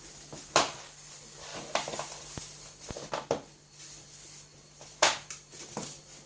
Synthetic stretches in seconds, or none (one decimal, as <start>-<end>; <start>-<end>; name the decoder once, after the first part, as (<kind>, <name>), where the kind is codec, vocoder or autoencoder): 1.5-2.9 (vocoder, BigVGAN v2); 4.5-5.5